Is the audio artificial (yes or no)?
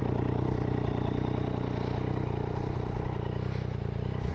no